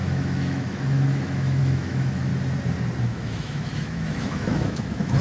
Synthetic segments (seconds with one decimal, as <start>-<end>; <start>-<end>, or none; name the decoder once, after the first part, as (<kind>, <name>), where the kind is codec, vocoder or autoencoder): 0.0-2.3 (autoencoder, DAC-VAE); 3.0-5.2